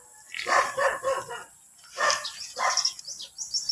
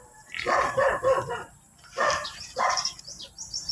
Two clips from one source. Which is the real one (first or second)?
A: first